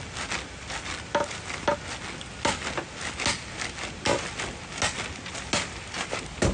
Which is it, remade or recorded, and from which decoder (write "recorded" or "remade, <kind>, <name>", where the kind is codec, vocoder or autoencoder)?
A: recorded